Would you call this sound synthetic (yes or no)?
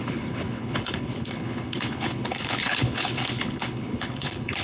yes